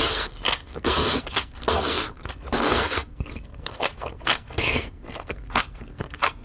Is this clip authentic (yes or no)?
no